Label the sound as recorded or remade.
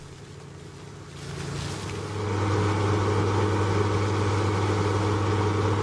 recorded